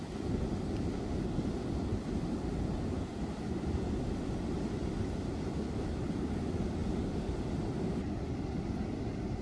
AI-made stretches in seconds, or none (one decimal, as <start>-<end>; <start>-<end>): none